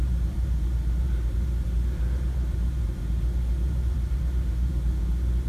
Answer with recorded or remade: remade